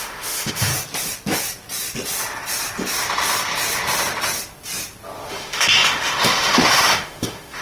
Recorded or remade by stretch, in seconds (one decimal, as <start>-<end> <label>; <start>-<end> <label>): 0.0-0.7 remade; 0.7-5.3 recorded; 5.3-7.6 remade